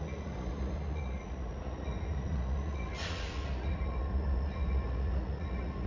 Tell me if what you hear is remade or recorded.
remade